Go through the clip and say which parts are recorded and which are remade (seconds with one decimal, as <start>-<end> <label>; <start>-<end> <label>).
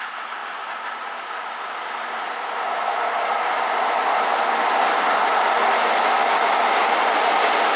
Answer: 0.0-7.8 recorded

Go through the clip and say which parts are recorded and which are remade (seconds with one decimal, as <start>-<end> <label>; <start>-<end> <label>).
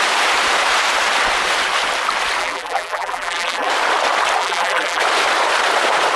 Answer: 0.0-2.4 recorded; 2.4-3.7 remade; 3.7-4.4 recorded; 4.4-5.0 remade; 5.0-6.2 recorded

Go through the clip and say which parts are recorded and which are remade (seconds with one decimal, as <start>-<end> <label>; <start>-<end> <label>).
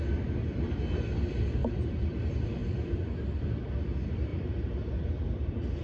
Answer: 0.0-1.6 recorded; 1.6-2.2 remade; 2.2-2.6 recorded; 2.6-3.4 remade; 3.4-4.3 recorded; 4.3-5.1 remade; 5.1-5.8 recorded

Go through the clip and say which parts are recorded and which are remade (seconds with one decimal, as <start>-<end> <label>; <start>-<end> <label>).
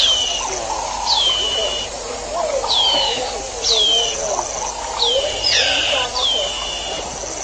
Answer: 0.0-7.4 recorded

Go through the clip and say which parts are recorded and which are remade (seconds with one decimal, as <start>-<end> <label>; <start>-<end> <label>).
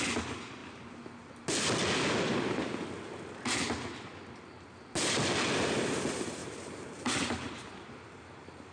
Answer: 0.0-6.4 recorded; 6.4-7.8 remade; 7.8-8.7 recorded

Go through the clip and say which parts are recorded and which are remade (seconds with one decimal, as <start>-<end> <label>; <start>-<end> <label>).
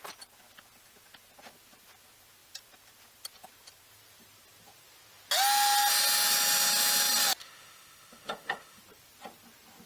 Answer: 0.0-7.4 recorded; 7.4-8.8 remade; 8.8-9.9 recorded